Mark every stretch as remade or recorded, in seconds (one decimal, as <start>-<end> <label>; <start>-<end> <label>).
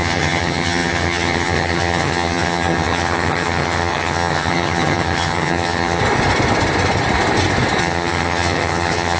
0.0-6.0 remade; 6.0-7.8 recorded; 7.8-9.2 remade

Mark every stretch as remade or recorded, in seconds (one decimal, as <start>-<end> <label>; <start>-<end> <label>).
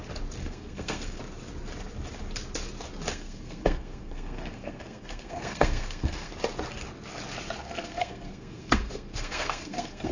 0.0-0.4 recorded; 0.4-1.2 remade; 1.2-3.1 recorded; 3.1-6.3 remade; 6.3-7.6 recorded; 7.6-10.1 remade